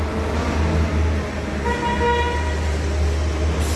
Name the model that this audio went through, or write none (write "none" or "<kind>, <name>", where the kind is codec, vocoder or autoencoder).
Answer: none